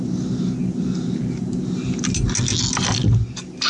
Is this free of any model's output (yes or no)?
yes